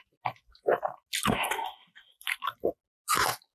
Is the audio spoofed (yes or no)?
no